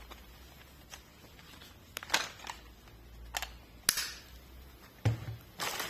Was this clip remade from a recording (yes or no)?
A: no